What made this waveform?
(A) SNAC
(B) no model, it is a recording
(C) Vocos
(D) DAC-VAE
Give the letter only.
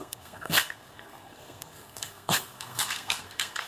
A